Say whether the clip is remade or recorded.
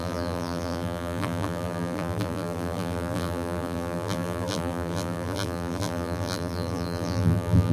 remade